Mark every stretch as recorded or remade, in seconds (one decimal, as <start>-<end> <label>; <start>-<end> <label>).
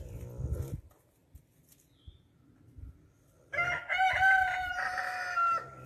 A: 0.0-5.9 recorded